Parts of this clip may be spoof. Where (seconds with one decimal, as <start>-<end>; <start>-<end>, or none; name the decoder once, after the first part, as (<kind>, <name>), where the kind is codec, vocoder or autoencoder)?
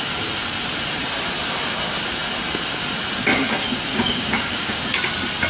3.9-4.8 (codec, DAC)